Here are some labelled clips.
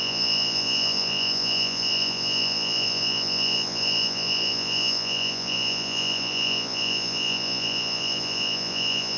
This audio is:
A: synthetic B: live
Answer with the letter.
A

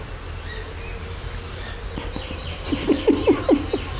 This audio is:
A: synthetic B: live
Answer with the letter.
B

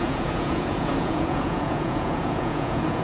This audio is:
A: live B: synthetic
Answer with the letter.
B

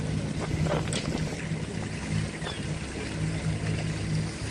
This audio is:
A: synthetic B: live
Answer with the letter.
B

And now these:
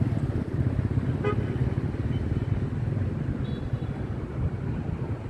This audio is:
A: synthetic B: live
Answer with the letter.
B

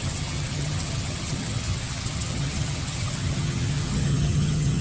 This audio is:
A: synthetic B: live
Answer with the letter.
A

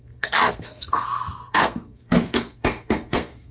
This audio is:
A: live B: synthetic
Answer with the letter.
B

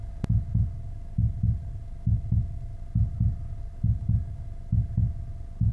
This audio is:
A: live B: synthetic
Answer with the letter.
A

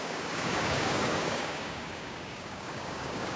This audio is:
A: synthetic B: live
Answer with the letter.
A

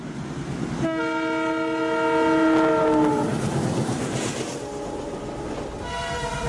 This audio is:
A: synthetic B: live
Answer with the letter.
B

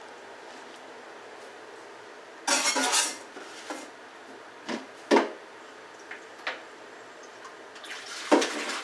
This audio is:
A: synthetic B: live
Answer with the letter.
B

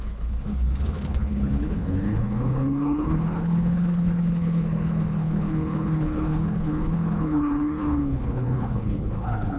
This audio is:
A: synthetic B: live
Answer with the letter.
A